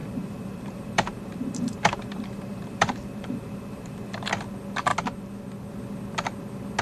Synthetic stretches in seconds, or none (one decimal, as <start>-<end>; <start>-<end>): 0.0-4.1